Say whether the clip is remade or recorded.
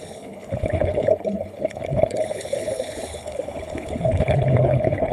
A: remade